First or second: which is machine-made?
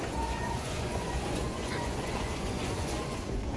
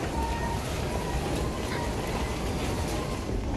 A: first